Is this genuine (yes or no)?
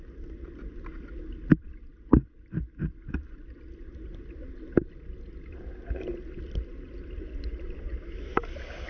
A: yes